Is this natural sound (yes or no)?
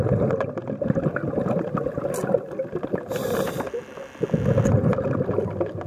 yes